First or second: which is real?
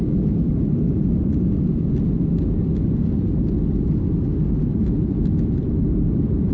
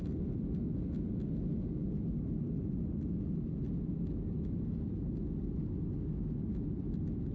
second